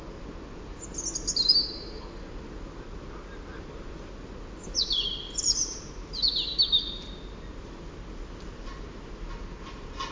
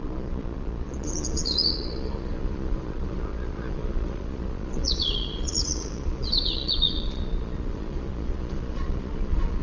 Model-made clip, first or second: second